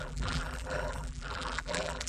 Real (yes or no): no